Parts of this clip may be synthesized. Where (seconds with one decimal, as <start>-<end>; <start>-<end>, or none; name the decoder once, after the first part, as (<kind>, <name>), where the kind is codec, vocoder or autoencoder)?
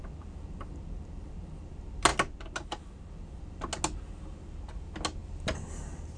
none